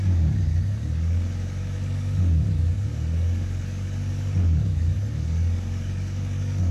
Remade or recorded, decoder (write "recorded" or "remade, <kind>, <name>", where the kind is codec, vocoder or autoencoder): remade, codec, DAC